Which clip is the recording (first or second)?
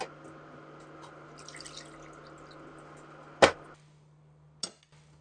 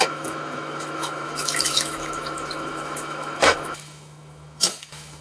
first